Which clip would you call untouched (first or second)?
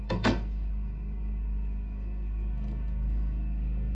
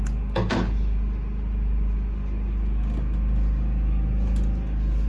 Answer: second